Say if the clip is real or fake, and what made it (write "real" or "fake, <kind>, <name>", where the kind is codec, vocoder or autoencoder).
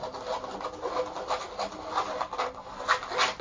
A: real